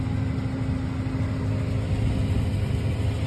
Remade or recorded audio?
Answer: recorded